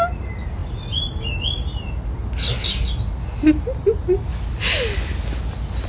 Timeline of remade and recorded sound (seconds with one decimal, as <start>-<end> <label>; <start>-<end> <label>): 0.0-5.9 recorded